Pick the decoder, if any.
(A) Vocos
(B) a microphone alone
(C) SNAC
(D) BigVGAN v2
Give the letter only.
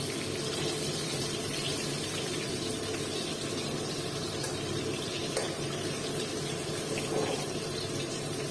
B